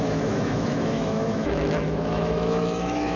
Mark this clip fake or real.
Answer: fake